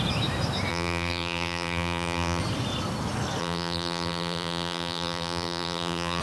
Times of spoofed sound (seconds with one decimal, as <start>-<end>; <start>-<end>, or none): 0.7-2.4; 3.4-6.2